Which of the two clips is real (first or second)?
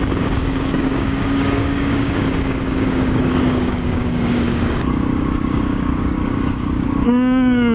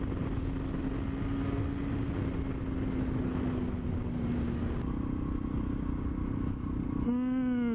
second